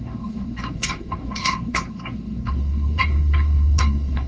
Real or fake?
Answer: fake